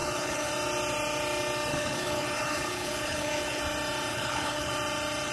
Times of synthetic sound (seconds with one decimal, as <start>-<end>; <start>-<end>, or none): 0.0-0.5; 1.7-3.6; 4.1-4.7